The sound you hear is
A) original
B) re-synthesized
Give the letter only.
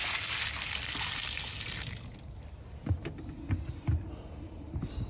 A